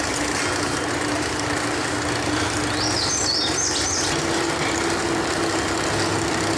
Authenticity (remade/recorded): recorded